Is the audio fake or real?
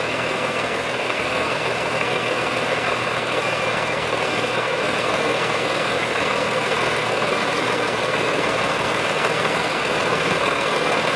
fake